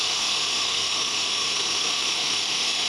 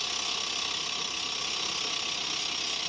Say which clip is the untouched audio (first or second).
second